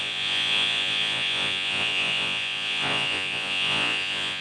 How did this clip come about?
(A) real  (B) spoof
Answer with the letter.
B